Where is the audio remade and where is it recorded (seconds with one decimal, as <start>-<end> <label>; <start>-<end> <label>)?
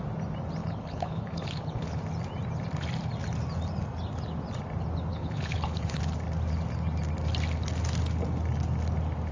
0.0-0.6 recorded; 0.6-2.0 remade; 2.0-5.1 recorded; 5.1-6.0 remade; 6.0-9.3 recorded